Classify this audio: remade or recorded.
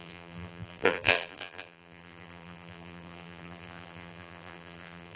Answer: remade